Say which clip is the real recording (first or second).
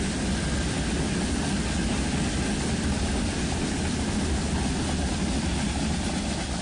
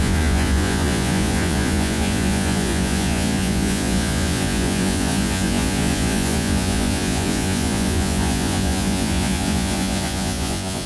first